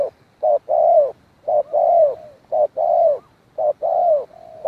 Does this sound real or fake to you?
fake